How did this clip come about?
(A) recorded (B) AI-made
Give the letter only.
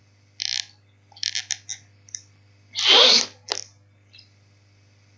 A